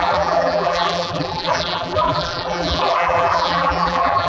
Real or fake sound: fake